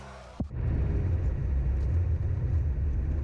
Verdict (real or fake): real